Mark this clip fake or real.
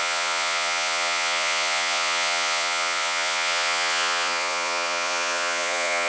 fake